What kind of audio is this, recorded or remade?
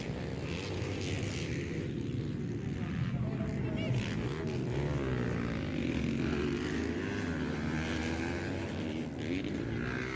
recorded